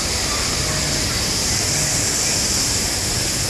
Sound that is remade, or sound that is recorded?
recorded